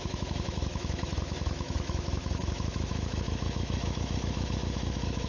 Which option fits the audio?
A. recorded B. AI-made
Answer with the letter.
B